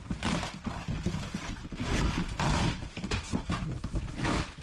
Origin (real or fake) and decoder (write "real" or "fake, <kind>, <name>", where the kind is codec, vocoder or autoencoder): real